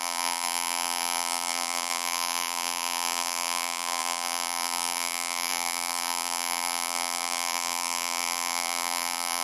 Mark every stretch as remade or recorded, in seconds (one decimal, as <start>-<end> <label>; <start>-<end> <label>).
0.0-9.4 remade